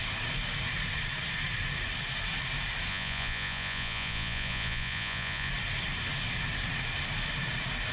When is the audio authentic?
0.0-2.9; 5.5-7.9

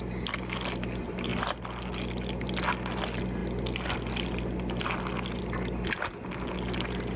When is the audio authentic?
0.0-7.2

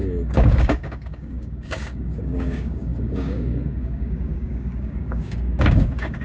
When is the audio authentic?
none

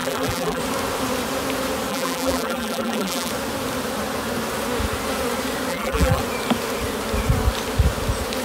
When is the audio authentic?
0.6-1.9; 3.3-5.7; 6.2-8.4

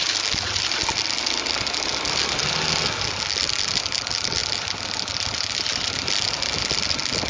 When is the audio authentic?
0.0-7.3

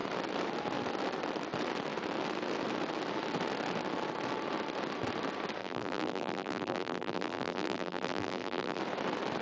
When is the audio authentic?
0.0-5.6; 8.8-9.4